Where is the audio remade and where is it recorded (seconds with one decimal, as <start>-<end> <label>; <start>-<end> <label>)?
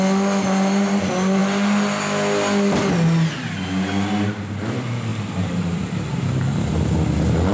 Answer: 0.0-7.5 recorded